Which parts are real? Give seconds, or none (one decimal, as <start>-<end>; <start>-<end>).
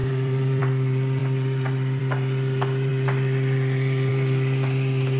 0.6-1.2; 2.0-5.2